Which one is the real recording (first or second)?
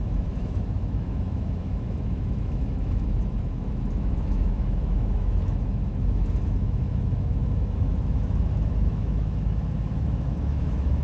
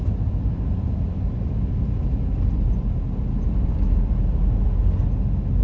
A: second